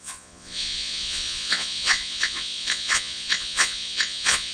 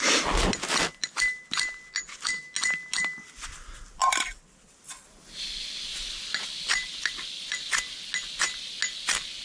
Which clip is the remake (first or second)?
first